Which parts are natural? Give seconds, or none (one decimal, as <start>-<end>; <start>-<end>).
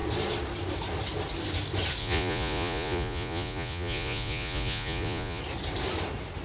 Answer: 0.0-2.0; 5.4-6.4